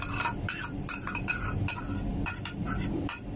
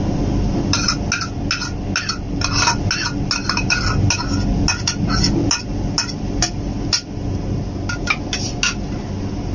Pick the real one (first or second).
second